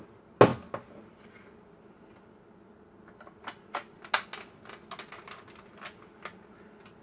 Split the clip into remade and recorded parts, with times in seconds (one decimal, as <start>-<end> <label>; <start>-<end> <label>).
0.0-7.0 recorded